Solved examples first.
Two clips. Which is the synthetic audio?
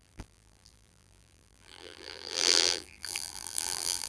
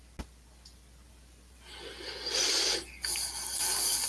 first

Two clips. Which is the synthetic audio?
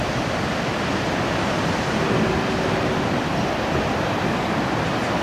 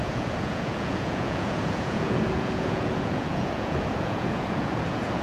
second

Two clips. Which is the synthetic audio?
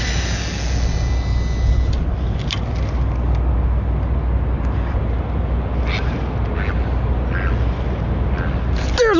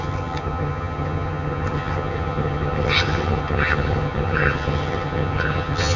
second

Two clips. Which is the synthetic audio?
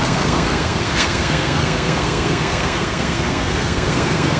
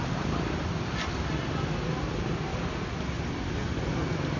first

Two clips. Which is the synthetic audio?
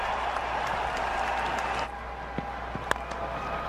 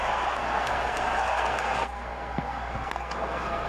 second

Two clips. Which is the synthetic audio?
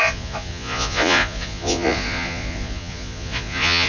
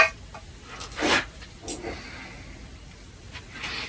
first